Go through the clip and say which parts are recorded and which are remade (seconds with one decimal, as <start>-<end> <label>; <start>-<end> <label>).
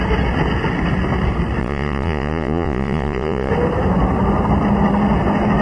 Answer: 0.0-1.6 recorded; 1.6-3.5 remade; 3.5-5.6 recorded